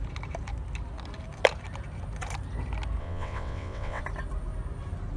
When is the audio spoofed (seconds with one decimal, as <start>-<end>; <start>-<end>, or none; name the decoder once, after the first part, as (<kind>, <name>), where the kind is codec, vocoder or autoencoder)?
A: 3.0-4.0 (vocoder, WaveNeXt)